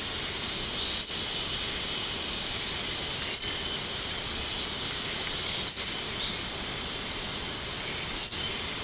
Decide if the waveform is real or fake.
real